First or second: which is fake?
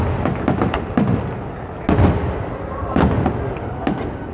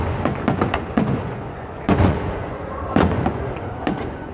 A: second